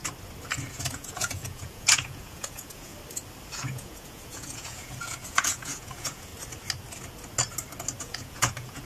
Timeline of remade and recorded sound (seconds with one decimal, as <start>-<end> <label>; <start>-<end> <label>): 0.0-0.9 recorded; 0.9-2.9 remade; 2.9-3.6 recorded; 3.6-6.3 remade; 6.3-8.0 recorded; 8.0-8.8 remade